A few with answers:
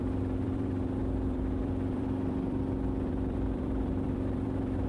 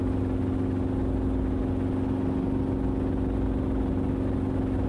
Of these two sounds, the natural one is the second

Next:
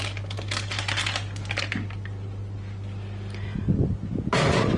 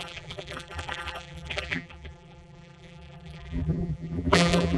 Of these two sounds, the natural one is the first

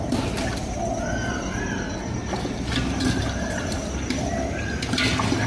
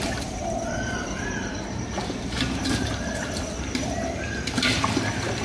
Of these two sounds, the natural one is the first